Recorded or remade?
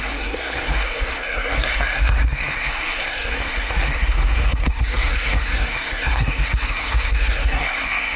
remade